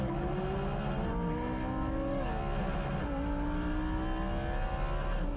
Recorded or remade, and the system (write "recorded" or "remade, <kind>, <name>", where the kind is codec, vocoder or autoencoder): recorded